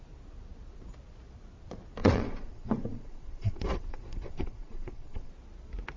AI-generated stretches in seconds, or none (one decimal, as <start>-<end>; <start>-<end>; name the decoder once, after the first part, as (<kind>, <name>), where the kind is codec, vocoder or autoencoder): 2.0-5.3 (vocoder, Vocos)